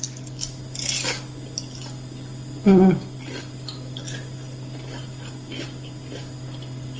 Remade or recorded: recorded